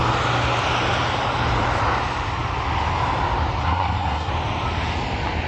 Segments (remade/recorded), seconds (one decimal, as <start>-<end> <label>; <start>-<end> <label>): 0.0-3.6 recorded; 3.6-4.3 remade; 4.3-5.5 recorded